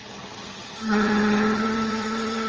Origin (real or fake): fake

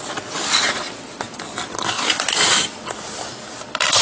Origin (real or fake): real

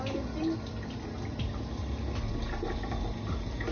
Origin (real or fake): real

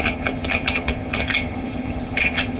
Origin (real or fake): fake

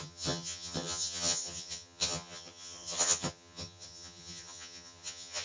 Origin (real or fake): fake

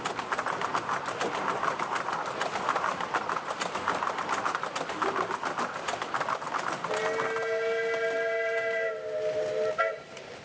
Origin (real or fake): real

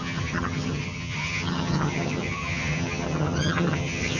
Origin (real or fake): fake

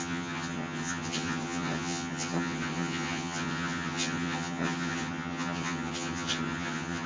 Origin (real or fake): fake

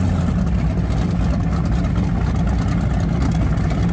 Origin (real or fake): real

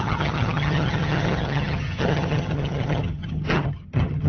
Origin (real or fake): fake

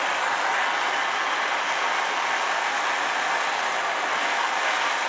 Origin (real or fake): real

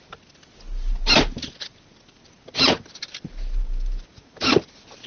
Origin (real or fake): real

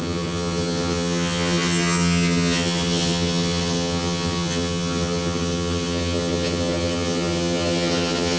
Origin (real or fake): fake